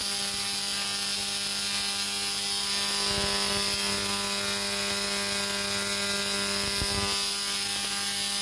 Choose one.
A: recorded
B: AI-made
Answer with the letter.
A